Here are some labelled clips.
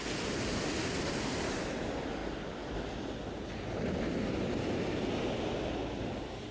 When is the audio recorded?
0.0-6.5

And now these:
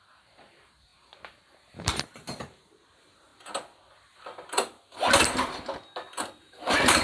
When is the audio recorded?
3.3-6.4

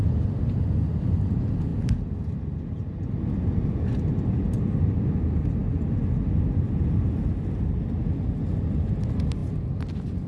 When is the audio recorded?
0.0-10.3

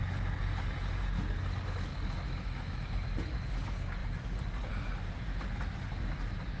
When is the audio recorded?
0.0-1.9; 3.5-6.6

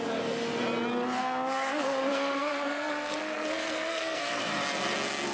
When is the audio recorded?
0.0-1.2; 4.4-5.3